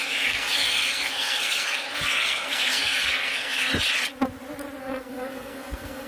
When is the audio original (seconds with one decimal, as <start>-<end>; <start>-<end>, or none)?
3.7-4.8